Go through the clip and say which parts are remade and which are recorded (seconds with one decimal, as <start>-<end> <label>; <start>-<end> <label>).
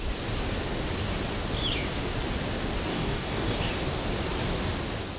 0.0-2.9 recorded; 2.9-3.7 remade; 3.7-5.2 recorded